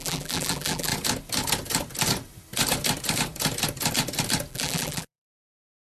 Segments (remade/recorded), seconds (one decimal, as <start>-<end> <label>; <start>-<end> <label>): 0.0-0.9 remade; 0.9-4.5 recorded; 4.5-6.0 remade

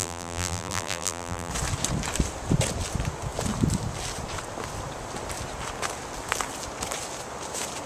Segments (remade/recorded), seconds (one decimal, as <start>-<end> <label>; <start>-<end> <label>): 0.0-1.5 remade; 1.5-7.9 recorded

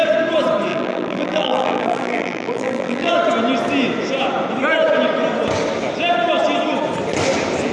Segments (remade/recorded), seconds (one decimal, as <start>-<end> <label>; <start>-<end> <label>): 0.0-0.7 recorded; 0.7-3.1 remade; 3.1-7.7 recorded

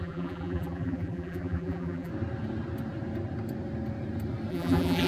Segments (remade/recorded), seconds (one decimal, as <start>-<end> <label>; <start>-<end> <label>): 0.0-2.1 remade; 2.1-4.5 recorded; 4.5-5.1 remade

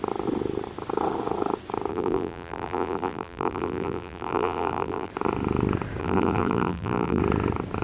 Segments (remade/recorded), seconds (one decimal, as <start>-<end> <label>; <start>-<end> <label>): 0.0-1.9 recorded; 1.9-5.1 remade; 5.1-6.0 recorded; 6.0-7.2 remade; 7.2-7.8 recorded

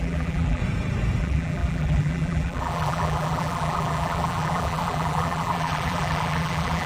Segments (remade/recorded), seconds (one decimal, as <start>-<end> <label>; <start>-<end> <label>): 0.0-0.6 remade; 0.6-1.2 recorded; 1.2-6.9 remade

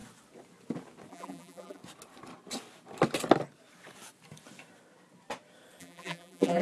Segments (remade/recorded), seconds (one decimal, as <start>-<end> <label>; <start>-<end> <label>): 0.0-1.1 recorded; 1.1-1.8 remade; 1.8-5.8 recorded; 5.8-6.6 remade